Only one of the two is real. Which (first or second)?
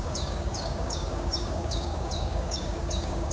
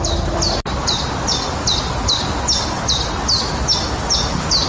second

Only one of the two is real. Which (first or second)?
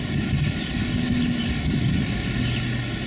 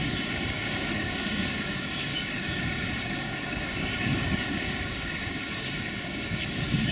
first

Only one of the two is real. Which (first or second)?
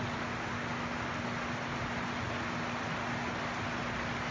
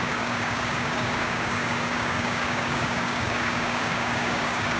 first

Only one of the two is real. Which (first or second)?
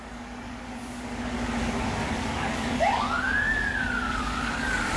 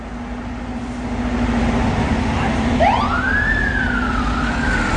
second